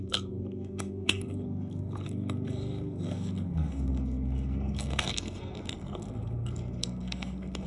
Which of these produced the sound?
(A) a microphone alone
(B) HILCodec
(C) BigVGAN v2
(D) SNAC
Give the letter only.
D